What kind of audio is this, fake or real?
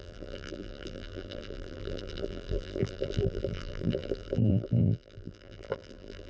fake